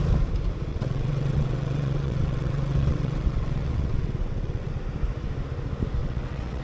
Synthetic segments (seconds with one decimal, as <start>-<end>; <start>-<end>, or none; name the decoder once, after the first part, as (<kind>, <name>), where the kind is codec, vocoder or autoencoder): 0.7-4.7 (vocoder, WaveNeXt); 6.0-6.6